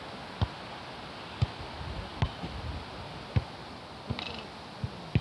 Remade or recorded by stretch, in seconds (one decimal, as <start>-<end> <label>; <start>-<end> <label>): 0.0-5.2 recorded